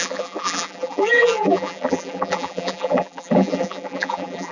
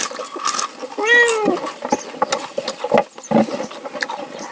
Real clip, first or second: second